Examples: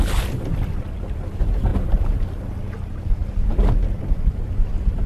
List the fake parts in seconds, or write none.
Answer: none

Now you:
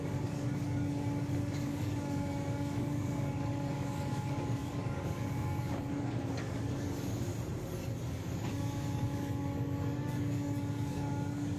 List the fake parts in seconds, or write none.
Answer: 0.0-7.3; 8.1-11.6

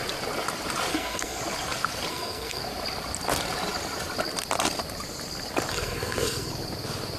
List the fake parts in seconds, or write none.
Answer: 0.9-1.4; 2.1-2.6; 5.7-6.5